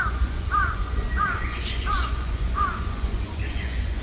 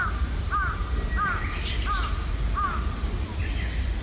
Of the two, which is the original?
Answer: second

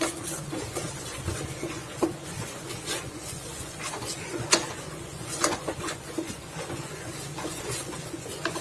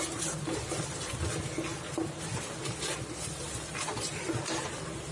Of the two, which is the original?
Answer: second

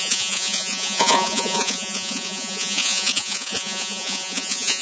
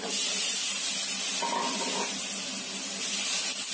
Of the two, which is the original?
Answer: second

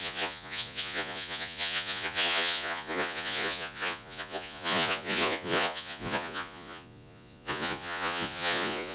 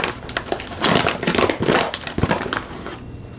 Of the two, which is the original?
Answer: second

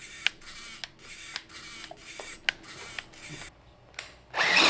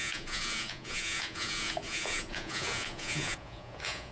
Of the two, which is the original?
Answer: first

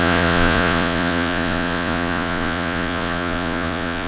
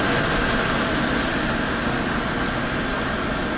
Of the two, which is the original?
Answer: second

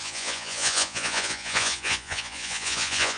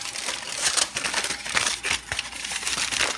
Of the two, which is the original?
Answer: second